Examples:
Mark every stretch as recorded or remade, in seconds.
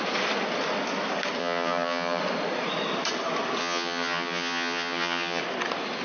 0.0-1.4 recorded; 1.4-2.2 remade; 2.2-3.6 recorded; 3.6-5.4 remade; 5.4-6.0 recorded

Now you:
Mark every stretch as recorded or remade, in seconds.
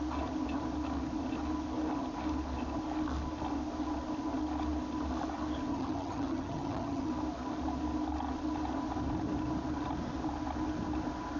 0.0-5.7 recorded; 5.7-7.1 remade; 7.1-11.4 recorded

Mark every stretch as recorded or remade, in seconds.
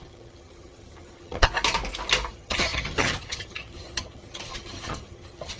0.0-1.5 remade; 1.5-2.3 recorded; 2.3-5.6 remade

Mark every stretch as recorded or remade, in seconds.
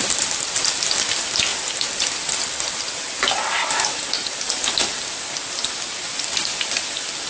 0.0-7.3 recorded